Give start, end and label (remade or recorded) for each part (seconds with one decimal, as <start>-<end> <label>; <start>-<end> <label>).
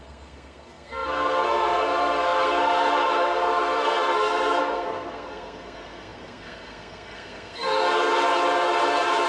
0.0-8.1 remade; 8.1-9.3 recorded